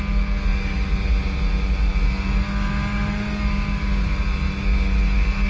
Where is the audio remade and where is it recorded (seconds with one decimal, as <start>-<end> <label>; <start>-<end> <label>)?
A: 0.0-5.5 recorded